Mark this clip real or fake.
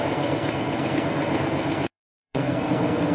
fake